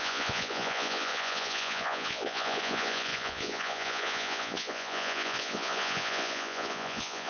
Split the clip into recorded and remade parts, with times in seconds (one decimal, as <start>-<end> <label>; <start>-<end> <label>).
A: 0.0-7.3 remade